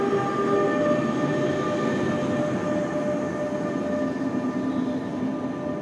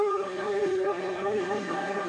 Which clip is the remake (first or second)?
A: second